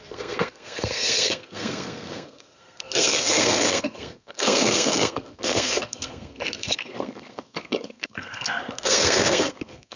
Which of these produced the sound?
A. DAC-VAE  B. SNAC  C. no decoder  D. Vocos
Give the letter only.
B